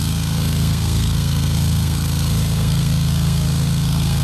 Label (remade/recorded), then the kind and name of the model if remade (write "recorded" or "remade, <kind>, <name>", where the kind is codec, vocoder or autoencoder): remade, codec, SNAC